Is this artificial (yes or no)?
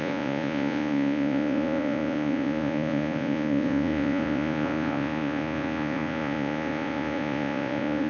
yes